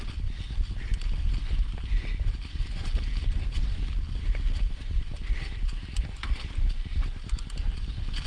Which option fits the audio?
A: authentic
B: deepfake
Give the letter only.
A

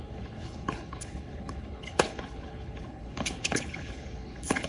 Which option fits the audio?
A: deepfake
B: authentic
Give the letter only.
A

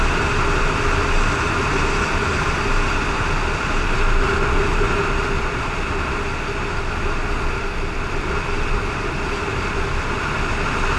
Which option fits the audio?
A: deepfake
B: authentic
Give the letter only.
B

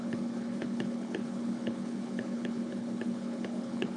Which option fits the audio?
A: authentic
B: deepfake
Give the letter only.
B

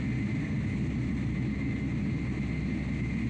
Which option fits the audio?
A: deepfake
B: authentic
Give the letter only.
B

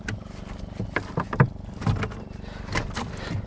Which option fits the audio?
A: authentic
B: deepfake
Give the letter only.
A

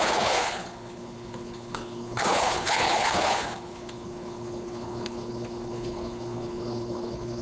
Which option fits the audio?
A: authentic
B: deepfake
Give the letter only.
B